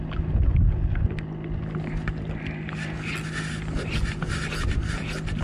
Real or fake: real